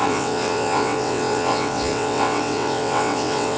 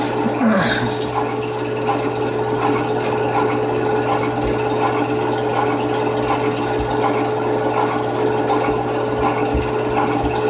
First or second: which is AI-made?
first